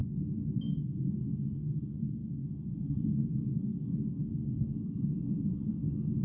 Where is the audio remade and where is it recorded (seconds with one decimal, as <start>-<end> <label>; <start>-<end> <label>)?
0.0-0.6 recorded; 0.6-6.2 remade